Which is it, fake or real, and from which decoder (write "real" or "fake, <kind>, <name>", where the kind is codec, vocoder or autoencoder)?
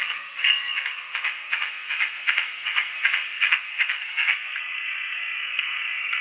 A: fake, codec, SNAC